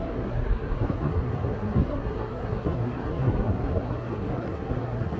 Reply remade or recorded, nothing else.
remade